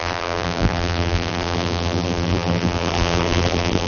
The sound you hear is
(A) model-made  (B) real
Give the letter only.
A